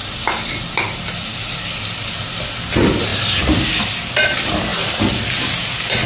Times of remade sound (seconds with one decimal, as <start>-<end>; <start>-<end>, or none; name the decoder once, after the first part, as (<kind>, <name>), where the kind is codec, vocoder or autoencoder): 3.1-3.8 (vocoder, BigVGAN v2); 4.7-5.4